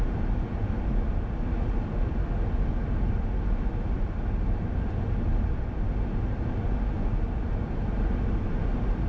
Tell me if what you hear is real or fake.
real